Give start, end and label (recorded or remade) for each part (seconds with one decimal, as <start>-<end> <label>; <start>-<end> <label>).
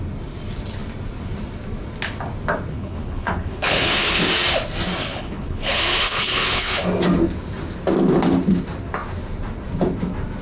0.0-2.7 recorded; 2.7-4.2 remade; 4.2-5.0 recorded; 5.0-6.8 remade; 6.8-10.4 recorded